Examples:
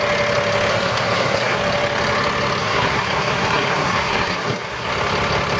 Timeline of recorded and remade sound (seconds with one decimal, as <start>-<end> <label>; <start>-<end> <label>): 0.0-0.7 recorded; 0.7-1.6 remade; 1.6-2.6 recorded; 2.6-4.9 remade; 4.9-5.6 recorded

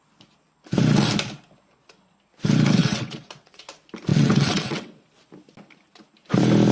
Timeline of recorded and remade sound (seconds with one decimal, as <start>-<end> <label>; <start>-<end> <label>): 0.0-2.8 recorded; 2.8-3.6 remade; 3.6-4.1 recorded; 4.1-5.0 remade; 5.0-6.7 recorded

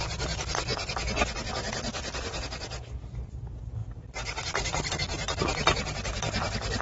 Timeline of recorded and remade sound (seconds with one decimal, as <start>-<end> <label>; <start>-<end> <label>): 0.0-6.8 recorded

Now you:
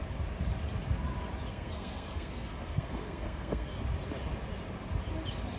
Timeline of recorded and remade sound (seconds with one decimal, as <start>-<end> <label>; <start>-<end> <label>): 0.0-1.5 recorded; 1.5-3.8 remade; 3.8-5.6 recorded